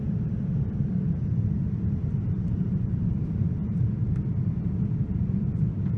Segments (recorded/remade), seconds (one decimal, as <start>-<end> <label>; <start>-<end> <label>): 0.0-6.0 recorded